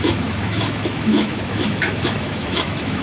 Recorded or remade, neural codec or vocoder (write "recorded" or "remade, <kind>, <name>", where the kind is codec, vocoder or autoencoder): remade, autoencoder, DAC-VAE